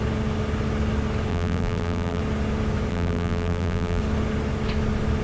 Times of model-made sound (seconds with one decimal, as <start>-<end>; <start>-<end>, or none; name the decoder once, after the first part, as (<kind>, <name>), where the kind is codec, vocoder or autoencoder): 1.3-2.2 (vocoder, BigVGAN v2); 2.9-4.0